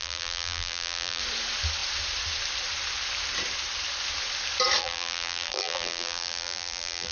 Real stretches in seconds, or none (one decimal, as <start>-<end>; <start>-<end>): 1.2-4.8

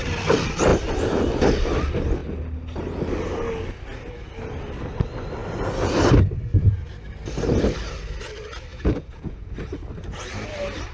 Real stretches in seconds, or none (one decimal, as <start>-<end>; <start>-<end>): 0.0-8.7; 9.5-10.9

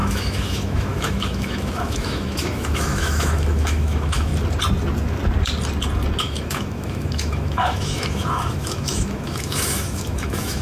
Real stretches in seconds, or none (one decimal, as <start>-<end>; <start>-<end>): 4.3-6.2

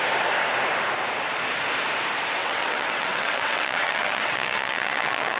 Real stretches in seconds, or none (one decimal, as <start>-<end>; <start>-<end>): 0.0-2.4